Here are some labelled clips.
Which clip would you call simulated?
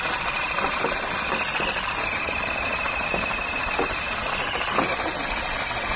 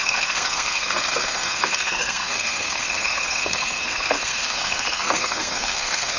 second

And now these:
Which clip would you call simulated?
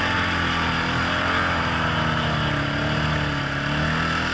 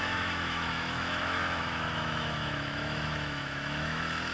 second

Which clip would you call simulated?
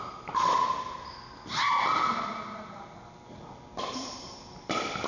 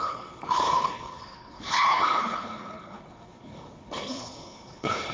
second